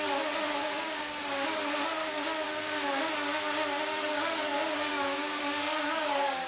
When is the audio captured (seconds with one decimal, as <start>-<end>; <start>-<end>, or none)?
0.0-0.6; 1.2-2.0; 3.1-4.9